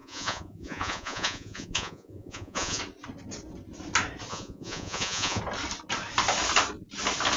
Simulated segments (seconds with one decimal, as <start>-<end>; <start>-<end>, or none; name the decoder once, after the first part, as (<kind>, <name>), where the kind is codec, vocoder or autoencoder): 0.0-2.8 (vocoder, Vocos); 4.3-5.4